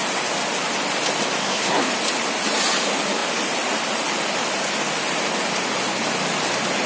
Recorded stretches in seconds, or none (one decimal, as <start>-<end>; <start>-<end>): 0.0-1.4; 1.9-6.9